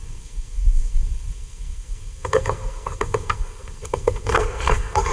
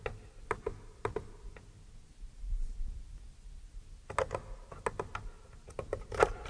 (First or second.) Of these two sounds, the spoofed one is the first